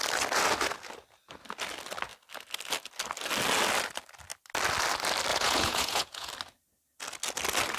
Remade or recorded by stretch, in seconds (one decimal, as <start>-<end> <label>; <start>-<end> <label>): 0.0-5.3 recorded; 5.3-6.3 remade; 6.3-7.8 recorded